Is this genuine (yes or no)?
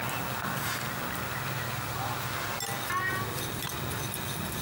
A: yes